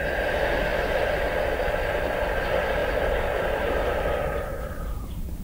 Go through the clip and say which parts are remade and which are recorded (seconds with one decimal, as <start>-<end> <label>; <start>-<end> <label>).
0.0-2.8 recorded; 2.8-5.0 remade; 5.0-5.4 recorded